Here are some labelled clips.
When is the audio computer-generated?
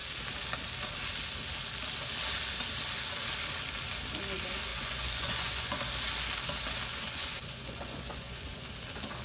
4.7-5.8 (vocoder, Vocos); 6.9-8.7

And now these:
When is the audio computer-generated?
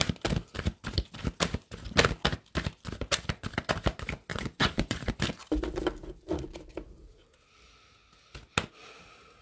4.3-5.1 (vocoder, Vocos)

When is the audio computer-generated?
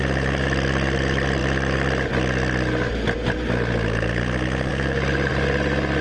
none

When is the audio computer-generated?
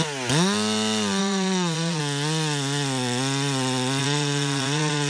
1.2-2.0 (vocoder, Vocos); 4.0-5.1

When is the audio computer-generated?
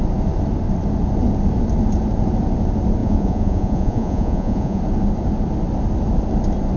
3.0-4.8 (vocoder, Vocos)